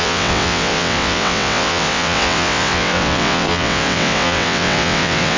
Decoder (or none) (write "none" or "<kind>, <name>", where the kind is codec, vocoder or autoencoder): vocoder, WaveNeXt